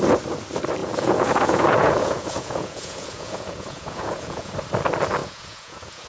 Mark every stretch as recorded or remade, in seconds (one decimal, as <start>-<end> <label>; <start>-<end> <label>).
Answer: 0.0-0.8 recorded; 0.8-4.5 remade; 4.5-5.2 recorded; 5.2-6.1 remade